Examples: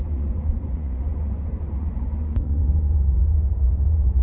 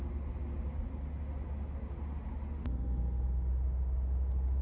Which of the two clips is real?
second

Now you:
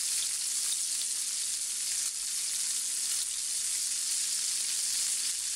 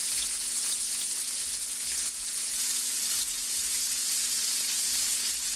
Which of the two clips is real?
first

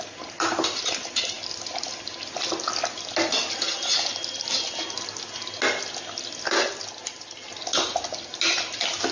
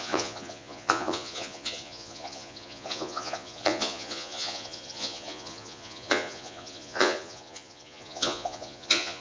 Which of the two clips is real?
first